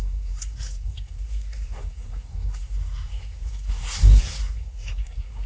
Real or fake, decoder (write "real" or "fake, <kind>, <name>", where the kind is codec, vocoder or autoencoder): fake, codec, SNAC